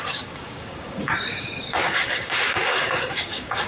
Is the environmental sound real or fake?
fake